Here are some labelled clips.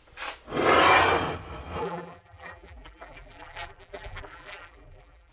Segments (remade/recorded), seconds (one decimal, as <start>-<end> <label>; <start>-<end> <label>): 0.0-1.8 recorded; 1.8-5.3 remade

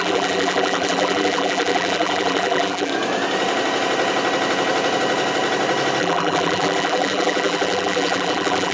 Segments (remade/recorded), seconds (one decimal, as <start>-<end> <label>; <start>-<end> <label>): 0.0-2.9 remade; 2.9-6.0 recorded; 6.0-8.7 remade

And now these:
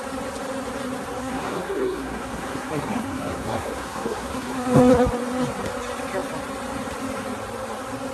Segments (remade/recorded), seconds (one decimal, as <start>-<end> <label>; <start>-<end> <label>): 0.0-1.2 recorded; 1.2-4.9 remade; 4.9-8.1 recorded

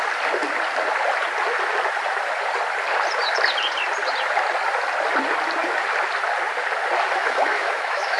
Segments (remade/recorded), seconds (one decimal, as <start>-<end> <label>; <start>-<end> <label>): 0.0-7.2 recorded; 7.2-8.2 remade

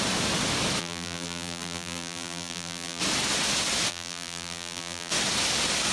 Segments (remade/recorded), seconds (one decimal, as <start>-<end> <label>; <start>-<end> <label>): 0.0-0.8 recorded; 0.8-3.0 remade; 3.0-3.9 recorded; 3.9-5.1 remade; 5.1-5.9 recorded

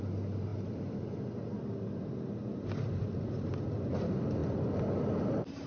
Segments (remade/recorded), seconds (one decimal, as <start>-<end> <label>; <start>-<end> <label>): 0.0-5.7 recorded

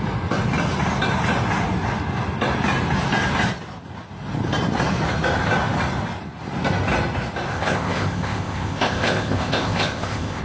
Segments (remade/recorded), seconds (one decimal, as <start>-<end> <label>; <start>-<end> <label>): 0.0-7.5 recorded; 7.5-10.4 remade